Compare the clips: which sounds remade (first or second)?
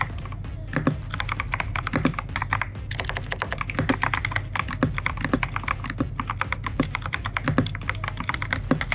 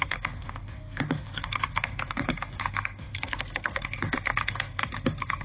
second